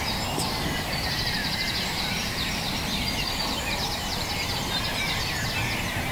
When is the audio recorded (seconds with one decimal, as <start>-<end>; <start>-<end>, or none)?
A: 0.0-1.4; 4.3-6.1